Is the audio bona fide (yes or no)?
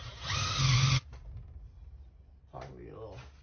yes